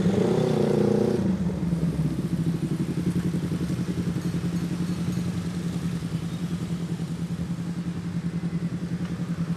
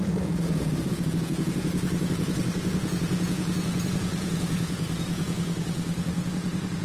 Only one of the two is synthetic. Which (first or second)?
second